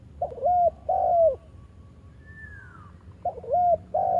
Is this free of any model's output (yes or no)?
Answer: yes